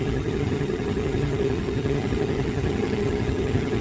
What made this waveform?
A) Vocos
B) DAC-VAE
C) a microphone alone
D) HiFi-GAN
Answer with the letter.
D